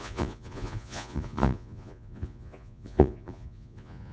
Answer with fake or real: fake